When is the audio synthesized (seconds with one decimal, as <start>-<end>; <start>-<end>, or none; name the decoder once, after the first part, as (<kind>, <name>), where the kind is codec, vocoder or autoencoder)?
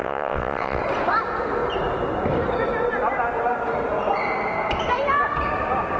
0.0-0.8 (vocoder, WaveNeXt)